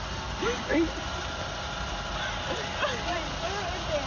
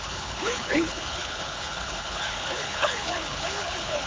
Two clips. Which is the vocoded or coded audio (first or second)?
second